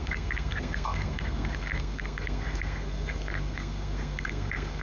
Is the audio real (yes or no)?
no